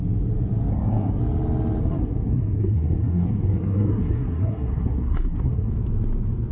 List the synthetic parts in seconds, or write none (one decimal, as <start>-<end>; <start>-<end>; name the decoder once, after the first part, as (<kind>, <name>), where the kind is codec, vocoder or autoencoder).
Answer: 0.7-1.2 (codec, SNAC); 1.8-5.7